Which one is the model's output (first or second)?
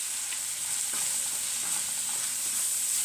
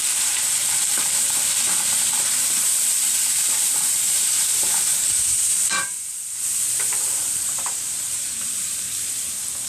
second